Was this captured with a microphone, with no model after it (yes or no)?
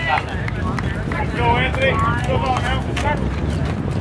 yes